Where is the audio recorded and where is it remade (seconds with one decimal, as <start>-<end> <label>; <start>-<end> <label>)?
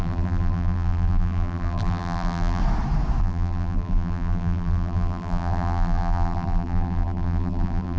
0.0-2.6 remade; 2.6-3.2 recorded; 3.2-8.0 remade